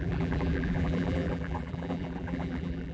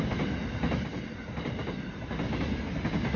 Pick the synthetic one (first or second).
first